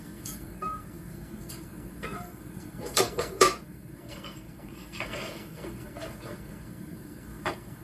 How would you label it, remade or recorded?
remade